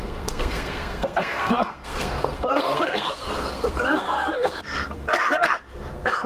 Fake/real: fake